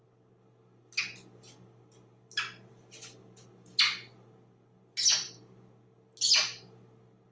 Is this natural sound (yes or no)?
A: yes